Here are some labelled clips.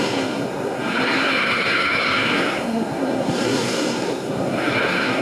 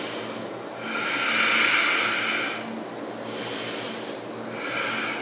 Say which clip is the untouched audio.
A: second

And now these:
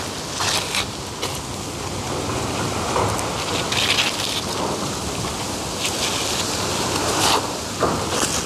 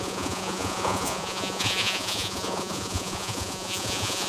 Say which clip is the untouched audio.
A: first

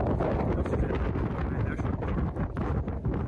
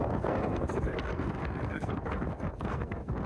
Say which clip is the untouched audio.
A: first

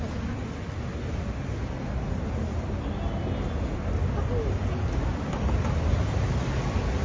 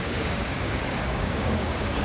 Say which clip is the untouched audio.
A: first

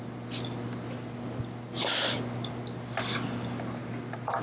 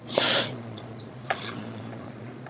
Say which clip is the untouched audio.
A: first